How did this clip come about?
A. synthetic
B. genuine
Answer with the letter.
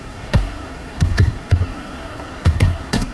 A